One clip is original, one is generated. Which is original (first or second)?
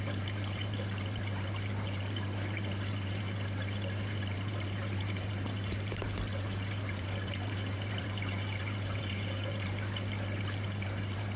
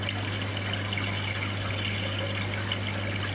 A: second